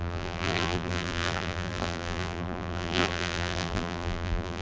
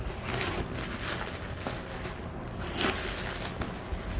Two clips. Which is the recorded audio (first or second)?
second